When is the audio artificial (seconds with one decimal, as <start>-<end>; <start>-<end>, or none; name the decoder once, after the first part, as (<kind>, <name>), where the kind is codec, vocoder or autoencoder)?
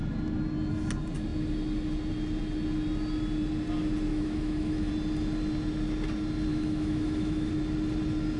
4.1-4.9 (autoencoder, DAC-VAE); 6.5-7.5